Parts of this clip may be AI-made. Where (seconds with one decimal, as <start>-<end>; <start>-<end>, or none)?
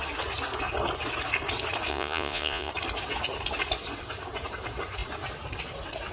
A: 1.9-2.7